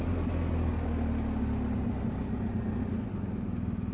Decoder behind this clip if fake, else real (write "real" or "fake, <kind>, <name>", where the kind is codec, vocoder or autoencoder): real